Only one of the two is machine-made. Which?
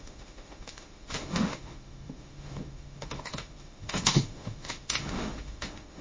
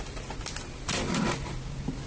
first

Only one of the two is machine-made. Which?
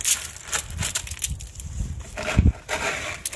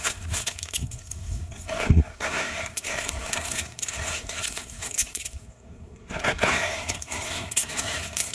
second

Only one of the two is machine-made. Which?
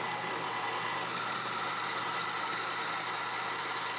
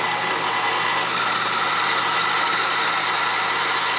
first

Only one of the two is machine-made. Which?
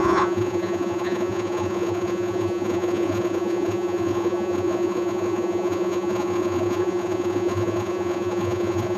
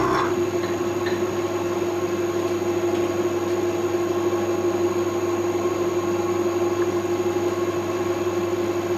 first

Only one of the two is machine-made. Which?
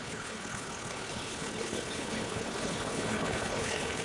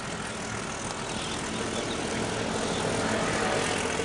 first